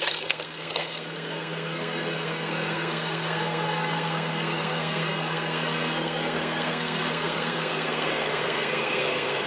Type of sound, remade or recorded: remade